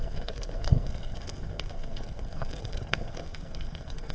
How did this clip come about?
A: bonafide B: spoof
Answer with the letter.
B